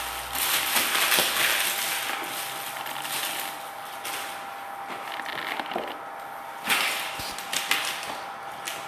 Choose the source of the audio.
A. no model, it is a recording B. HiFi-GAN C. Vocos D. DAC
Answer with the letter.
A